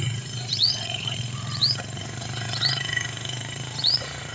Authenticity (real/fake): fake